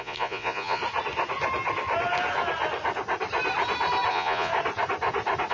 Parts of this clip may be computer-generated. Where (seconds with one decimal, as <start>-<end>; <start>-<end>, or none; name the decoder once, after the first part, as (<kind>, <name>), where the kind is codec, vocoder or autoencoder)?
0.0-0.8 (vocoder, Vocos); 4.1-4.5